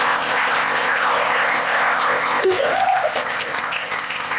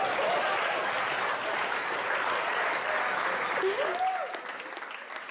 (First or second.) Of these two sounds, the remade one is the first